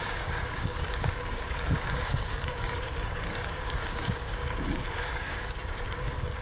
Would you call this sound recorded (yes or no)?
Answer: no